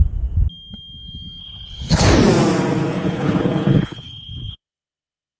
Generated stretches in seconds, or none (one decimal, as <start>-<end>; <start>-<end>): 1.4-2.1; 2.9-5.4

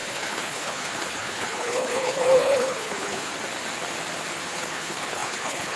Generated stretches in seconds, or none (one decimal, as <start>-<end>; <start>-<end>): 0.0-3.3; 4.4-5.8